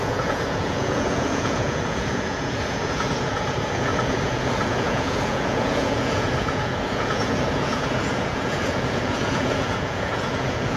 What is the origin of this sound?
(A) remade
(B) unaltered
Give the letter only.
A